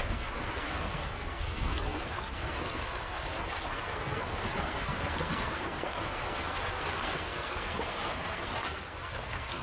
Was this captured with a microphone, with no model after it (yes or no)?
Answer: no